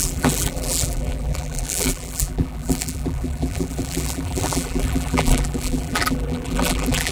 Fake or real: fake